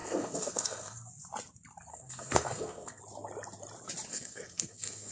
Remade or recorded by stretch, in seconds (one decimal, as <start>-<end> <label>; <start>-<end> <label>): 0.0-1.1 remade; 1.1-1.9 recorded; 1.9-3.0 remade; 3.0-4.1 recorded; 4.1-5.1 remade